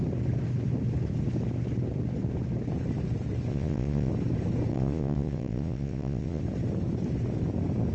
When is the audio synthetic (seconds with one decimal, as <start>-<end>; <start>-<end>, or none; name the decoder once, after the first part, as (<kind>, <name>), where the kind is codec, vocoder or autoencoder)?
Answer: 3.5-4.1 (vocoder, Vocos); 4.7-6.4